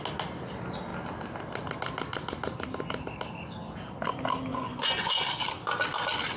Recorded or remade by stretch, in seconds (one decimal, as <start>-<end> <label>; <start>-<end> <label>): 0.0-4.5 recorded; 4.5-5.2 remade; 5.2-6.4 recorded